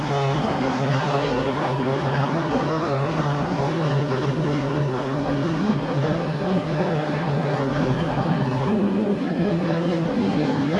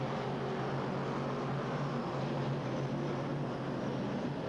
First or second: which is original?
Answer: second